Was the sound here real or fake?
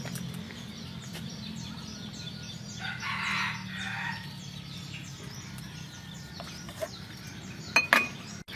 real